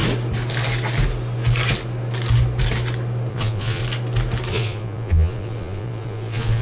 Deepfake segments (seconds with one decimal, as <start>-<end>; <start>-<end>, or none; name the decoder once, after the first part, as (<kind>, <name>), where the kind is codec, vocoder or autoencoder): 3.3-3.8 (vocoder, Vocos); 4.5-6.6